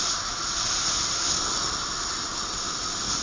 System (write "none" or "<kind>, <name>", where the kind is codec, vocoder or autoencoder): none